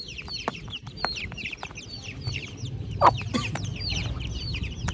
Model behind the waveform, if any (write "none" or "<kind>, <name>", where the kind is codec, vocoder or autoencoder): vocoder, BigVGAN v2